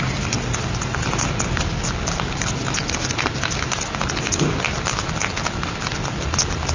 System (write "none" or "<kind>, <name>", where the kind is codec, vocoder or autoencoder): none